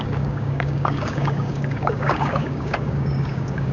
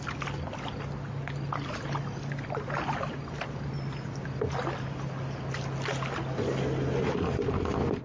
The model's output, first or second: first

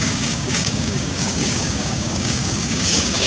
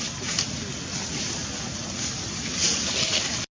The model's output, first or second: first